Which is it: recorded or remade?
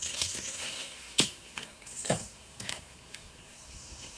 remade